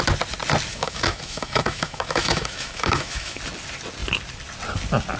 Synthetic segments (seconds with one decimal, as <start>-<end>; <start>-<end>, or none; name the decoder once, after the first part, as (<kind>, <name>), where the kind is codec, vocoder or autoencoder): 0.7-3.4 (autoencoder, DAC-VAE)